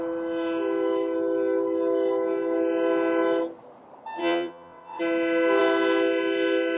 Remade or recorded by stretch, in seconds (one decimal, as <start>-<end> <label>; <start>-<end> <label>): 0.0-4.2 recorded; 4.2-5.0 remade; 5.0-6.8 recorded